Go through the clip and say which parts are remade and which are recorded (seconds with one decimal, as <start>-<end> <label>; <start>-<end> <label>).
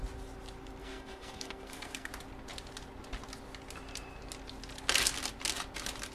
0.0-0.8 recorded; 0.8-2.1 remade; 2.1-6.1 recorded